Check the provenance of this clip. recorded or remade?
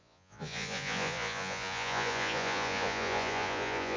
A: remade